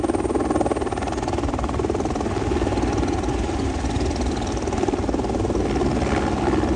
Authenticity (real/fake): real